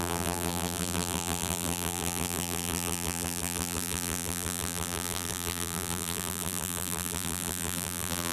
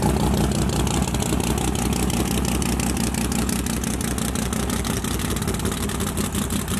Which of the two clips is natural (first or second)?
second